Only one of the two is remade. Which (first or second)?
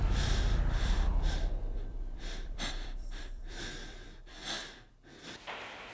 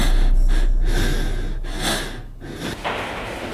first